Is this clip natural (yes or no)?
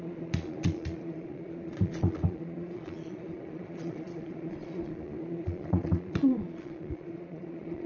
no